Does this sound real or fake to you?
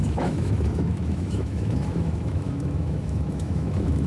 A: fake